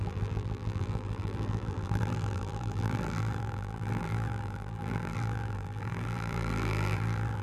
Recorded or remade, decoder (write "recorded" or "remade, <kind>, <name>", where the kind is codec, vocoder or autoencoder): remade, vocoder, BigVGAN v2